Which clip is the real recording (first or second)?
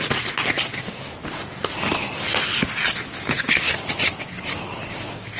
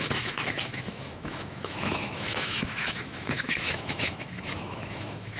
first